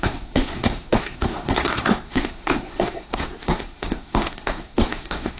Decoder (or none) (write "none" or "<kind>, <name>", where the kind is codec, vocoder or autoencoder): codec, SNAC